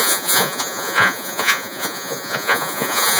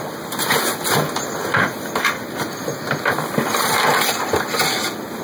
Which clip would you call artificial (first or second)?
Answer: first